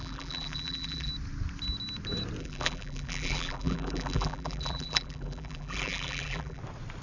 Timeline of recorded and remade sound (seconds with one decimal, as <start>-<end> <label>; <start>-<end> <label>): 0.0-1.1 remade; 1.1-2.4 recorded; 2.4-6.6 remade; 6.6-7.0 recorded